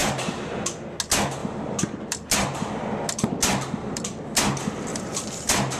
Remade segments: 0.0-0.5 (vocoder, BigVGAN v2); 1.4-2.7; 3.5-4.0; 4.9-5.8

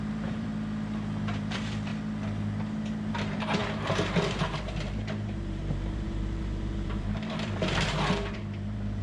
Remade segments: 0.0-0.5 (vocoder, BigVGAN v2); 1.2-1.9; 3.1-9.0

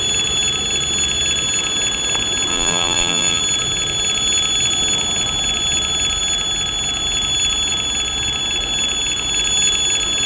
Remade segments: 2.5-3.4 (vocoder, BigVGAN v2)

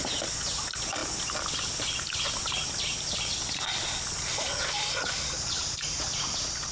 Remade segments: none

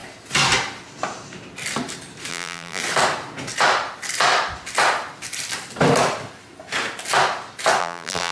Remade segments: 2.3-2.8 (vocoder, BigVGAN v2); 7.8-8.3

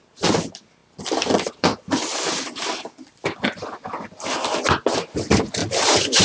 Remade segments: 0.8-4.5 (vocoder, BigVGAN v2); 5.6-6.2

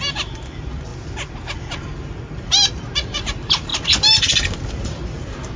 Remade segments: 0.0-0.9 (vocoder, BigVGAN v2); 2.7-3.7; 4.7-5.6

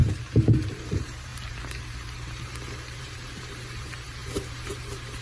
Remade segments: 0.0-5.2 (vocoder, BigVGAN v2)